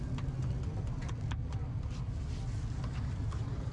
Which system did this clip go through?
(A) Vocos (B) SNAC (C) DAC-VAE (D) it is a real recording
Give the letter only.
D